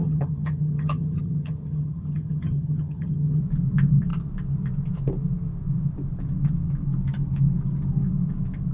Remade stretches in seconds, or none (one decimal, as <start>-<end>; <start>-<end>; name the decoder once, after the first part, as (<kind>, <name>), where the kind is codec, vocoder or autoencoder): 0.0-3.4 (vocoder, HiFi-GAN)

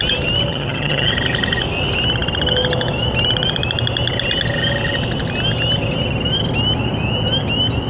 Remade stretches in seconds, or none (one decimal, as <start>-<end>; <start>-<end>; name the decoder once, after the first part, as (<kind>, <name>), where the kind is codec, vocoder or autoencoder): 0.5-1.1 (vocoder, HiFi-GAN)

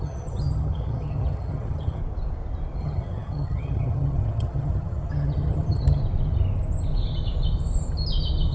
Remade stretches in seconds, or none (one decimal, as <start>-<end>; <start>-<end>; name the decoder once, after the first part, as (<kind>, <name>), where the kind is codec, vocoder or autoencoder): 0.0-2.0 (vocoder, HiFi-GAN); 2.8-6.0

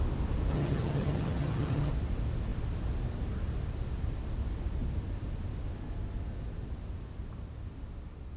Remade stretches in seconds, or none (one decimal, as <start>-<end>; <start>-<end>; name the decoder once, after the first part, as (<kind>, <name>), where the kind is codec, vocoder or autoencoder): 0.5-1.9 (vocoder, HiFi-GAN)

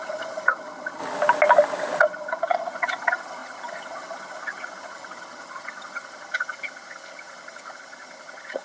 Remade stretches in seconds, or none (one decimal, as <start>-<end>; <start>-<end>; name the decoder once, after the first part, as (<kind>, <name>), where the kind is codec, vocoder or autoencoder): 0.0-1.0 (vocoder, HiFi-GAN); 2.0-8.6